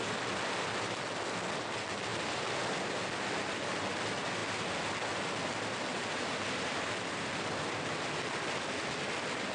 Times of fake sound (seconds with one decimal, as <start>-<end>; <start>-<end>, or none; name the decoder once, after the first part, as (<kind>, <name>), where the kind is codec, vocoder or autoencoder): 5.9-6.9 (vocoder, BigVGAN v2)